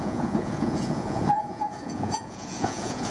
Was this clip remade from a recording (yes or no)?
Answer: yes